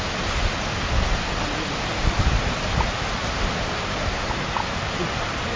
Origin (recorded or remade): recorded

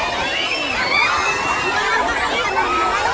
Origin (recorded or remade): recorded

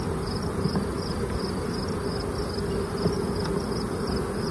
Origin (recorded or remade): recorded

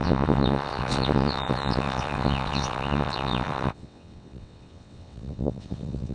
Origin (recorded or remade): remade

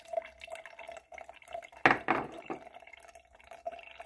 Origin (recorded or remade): recorded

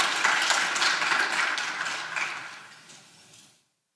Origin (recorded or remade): recorded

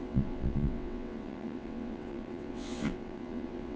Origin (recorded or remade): remade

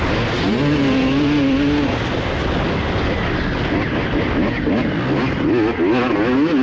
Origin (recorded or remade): recorded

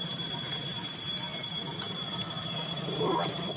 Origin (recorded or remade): recorded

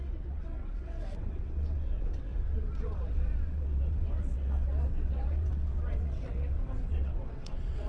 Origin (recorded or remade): remade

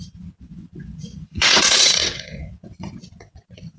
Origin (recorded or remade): remade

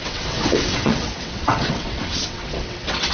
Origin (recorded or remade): remade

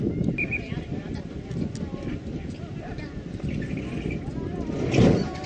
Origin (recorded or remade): recorded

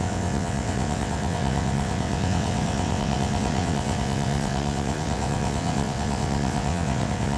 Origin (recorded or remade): remade